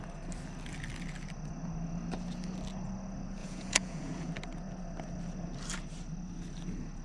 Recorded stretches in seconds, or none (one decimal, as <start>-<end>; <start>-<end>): 0.0-3.4; 4.3-7.0